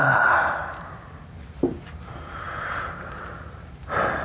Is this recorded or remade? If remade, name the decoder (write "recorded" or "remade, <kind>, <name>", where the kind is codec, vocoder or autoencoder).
remade, vocoder, BigVGAN v2